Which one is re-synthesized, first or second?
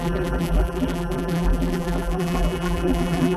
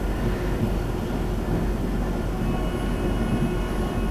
first